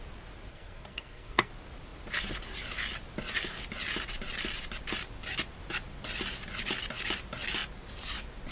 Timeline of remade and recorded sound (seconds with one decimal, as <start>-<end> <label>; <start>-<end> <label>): 0.0-0.5 recorded; 0.5-1.5 remade; 1.5-8.5 recorded